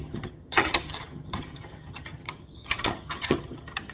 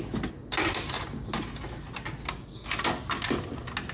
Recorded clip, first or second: second